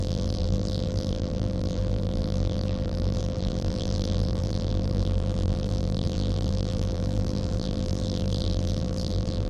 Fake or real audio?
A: fake